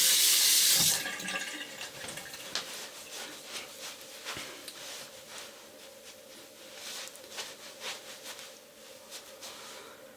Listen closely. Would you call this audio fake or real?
real